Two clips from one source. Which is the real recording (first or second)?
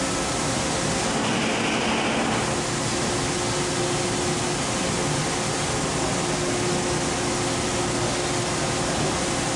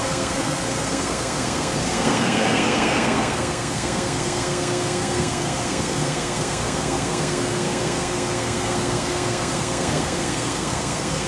first